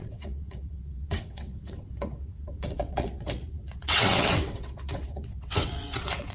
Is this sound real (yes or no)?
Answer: no